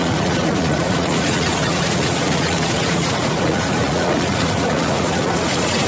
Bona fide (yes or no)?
no